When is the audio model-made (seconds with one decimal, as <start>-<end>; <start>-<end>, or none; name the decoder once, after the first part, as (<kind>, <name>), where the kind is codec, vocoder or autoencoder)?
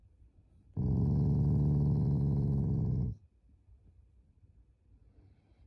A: 0.0-3.4 (vocoder, BigVGAN v2)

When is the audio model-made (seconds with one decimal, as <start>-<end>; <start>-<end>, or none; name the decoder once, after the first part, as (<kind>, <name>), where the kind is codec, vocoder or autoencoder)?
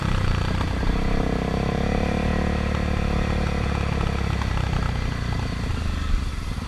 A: 0.0-2.3 (vocoder, BigVGAN v2); 6.3-6.7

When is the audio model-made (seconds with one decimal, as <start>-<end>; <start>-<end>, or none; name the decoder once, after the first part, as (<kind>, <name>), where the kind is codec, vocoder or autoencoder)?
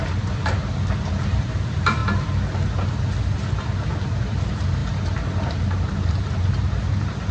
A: 0.0-0.6 (vocoder, BigVGAN v2); 1.1-2.0; 4.2-7.3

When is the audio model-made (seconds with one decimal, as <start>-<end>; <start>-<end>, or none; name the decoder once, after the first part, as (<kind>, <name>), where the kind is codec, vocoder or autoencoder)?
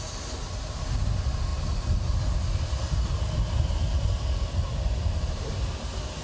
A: none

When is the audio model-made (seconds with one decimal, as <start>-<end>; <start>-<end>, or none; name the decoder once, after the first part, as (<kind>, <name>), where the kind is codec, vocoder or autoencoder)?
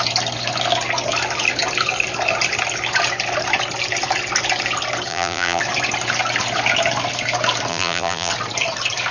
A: 5.1-5.6 (vocoder, BigVGAN v2); 7.7-8.3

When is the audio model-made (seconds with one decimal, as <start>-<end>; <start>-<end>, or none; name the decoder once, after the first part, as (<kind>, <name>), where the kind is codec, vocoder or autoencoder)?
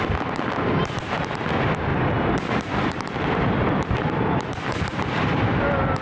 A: 1.9-5.4 (vocoder, BigVGAN v2)